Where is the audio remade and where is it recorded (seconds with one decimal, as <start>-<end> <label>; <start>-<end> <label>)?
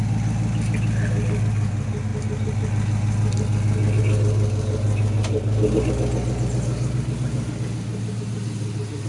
0.0-9.1 recorded